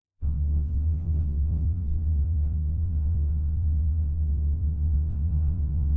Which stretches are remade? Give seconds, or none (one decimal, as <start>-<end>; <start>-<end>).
0.0-6.0

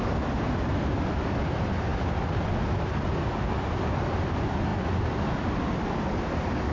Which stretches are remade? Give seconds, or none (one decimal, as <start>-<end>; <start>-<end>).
none

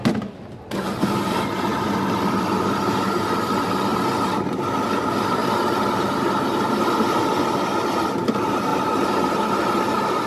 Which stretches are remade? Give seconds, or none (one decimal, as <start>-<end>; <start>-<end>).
none

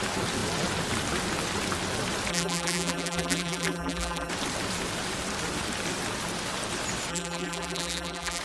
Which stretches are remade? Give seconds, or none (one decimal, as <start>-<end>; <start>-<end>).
2.3-4.3; 7.1-8.4

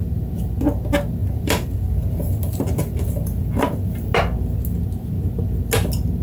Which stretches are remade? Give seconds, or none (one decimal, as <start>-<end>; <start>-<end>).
1.2-3.8

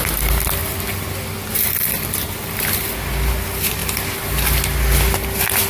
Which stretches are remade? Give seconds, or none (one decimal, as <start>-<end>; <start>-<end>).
none

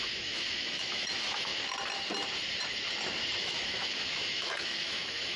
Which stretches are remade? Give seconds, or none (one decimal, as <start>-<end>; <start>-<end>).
0.0-1.5; 3.4-5.4

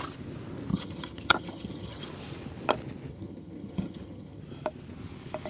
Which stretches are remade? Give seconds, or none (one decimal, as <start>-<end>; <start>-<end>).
0.7-2.0; 3.1-4.4